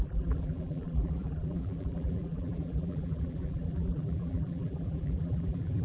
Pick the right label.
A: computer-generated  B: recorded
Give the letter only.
A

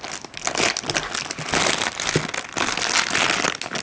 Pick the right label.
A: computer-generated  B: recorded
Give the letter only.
B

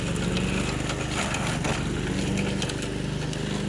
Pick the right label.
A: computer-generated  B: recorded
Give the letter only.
B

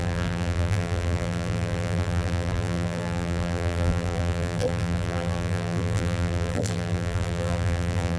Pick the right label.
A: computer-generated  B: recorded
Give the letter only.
A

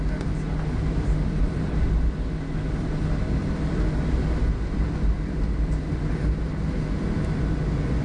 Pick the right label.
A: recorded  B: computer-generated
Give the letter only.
A